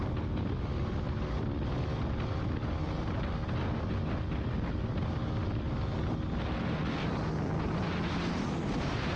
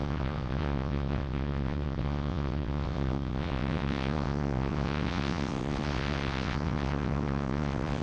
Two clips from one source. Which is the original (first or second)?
first